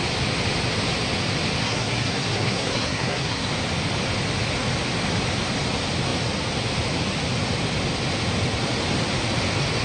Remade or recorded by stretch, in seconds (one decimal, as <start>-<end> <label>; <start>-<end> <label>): 0.0-1.6 recorded; 1.6-3.5 remade; 3.5-9.8 recorded